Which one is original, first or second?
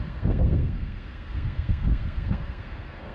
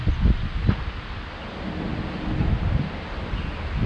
second